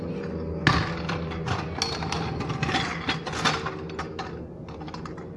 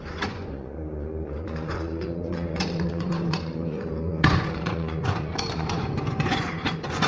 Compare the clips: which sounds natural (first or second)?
first